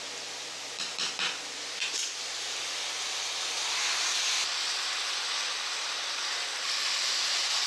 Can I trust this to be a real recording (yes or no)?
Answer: yes